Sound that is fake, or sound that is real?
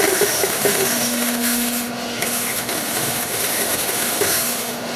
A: fake